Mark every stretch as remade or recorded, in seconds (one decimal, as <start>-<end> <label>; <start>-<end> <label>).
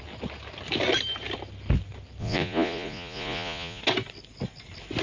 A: 0.0-2.2 recorded; 2.2-3.8 remade; 3.8-5.0 recorded